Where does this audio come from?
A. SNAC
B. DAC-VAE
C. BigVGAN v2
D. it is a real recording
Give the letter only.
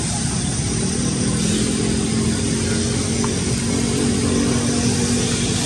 D